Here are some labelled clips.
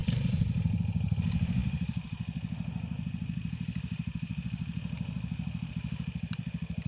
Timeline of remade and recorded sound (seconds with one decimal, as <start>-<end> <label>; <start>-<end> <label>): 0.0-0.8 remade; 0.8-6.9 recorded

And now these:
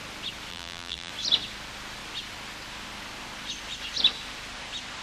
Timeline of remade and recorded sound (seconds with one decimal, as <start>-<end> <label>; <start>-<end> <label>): 0.0-0.5 recorded; 0.5-1.1 remade; 1.1-5.0 recorded

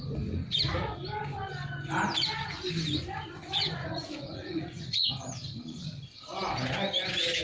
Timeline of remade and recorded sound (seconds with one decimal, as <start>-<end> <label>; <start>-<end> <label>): 0.0-3.8 recorded; 3.8-5.1 remade; 5.1-7.4 recorded

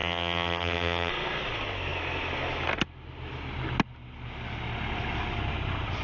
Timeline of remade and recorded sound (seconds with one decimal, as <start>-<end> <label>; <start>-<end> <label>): 0.0-1.1 remade; 1.1-6.0 recorded

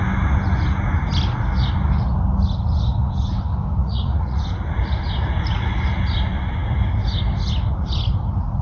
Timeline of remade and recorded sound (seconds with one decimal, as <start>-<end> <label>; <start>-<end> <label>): 0.0-3.8 recorded; 3.8-4.4 remade; 4.4-8.6 recorded

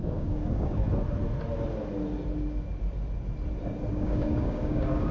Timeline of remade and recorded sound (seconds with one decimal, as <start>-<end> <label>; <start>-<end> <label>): 0.0-0.8 remade; 0.8-3.9 recorded; 3.9-5.1 remade

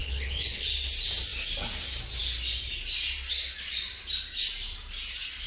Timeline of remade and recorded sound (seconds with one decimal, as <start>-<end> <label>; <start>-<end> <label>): 0.0-0.7 remade; 0.7-5.5 recorded

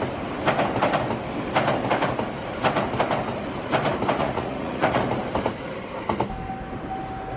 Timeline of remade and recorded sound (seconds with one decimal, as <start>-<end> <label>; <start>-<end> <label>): 0.0-4.2 recorded; 4.2-5.0 remade; 5.0-7.4 recorded